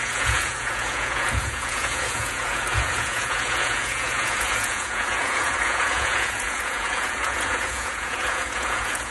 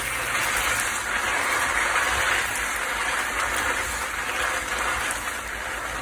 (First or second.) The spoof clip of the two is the first